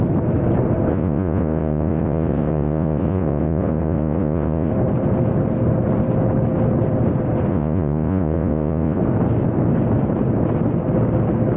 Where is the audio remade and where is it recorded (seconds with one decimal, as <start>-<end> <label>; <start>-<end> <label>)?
0.0-0.9 recorded; 0.9-4.7 remade; 4.7-7.5 recorded; 7.5-9.0 remade; 9.0-11.6 recorded